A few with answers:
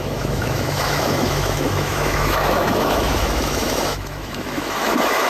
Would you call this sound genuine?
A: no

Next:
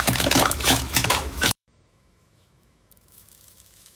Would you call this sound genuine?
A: no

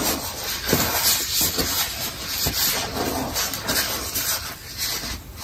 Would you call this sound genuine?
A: yes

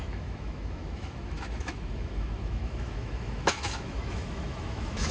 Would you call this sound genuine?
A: no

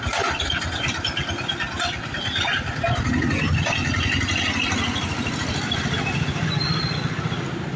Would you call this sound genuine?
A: yes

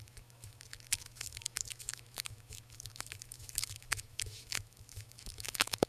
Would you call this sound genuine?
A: no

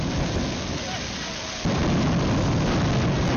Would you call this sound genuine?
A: yes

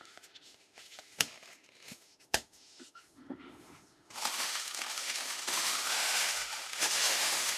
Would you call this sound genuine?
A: no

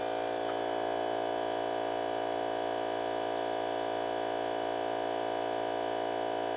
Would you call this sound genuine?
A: yes